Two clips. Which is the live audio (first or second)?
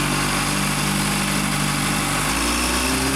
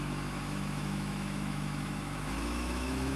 first